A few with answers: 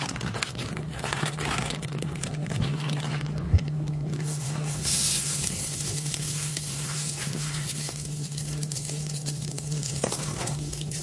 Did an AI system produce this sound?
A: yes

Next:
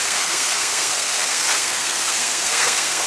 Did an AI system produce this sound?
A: yes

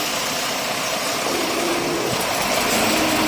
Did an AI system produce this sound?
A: no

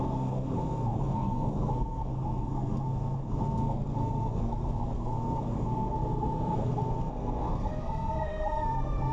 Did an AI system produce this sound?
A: yes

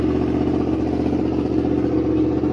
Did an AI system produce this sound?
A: no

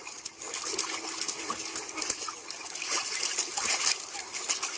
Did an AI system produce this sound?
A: no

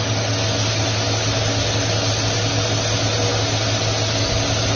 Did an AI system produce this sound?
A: no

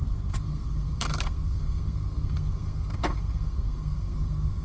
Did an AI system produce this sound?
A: yes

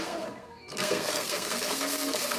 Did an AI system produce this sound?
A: yes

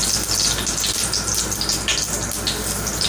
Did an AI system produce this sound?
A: no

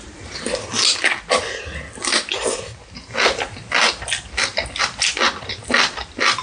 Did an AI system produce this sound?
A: no